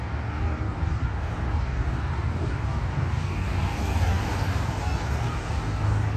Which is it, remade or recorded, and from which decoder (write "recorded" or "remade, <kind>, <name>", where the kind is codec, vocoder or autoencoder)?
remade, codec, DAC